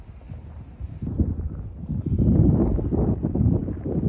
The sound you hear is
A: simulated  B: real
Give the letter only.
B